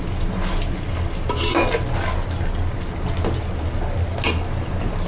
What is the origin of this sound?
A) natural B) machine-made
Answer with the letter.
A